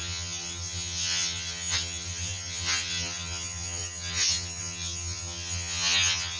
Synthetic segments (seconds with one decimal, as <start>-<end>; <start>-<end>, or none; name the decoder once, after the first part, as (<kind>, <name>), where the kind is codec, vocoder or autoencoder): 0.0-6.4 (vocoder, HiFi-GAN)